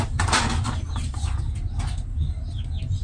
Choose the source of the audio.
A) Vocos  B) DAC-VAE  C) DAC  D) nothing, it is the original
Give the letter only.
D